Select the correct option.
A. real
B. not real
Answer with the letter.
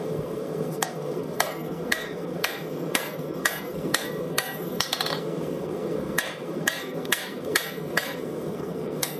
B